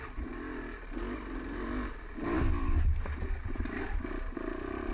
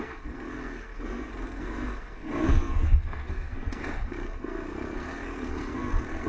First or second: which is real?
first